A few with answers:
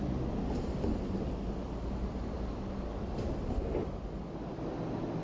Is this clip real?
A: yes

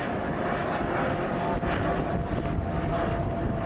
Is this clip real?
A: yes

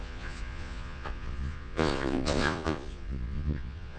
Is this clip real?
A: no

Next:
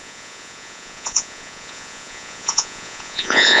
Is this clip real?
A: no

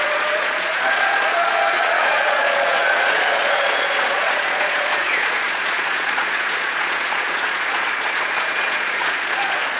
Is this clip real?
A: no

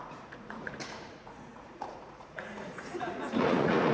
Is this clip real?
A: no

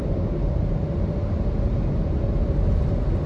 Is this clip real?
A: yes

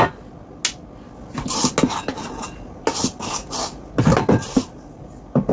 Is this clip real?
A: yes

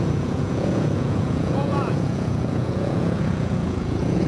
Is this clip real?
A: no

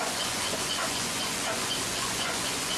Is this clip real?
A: no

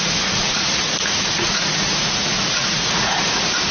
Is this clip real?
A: no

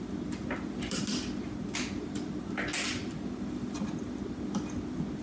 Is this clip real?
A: yes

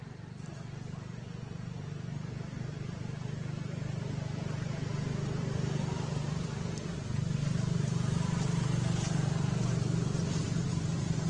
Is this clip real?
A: yes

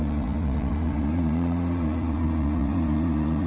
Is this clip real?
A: no